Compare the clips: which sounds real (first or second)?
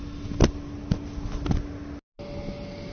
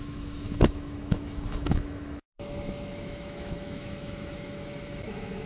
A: first